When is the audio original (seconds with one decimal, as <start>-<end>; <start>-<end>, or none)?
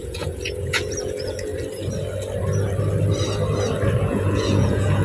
1.5-4.0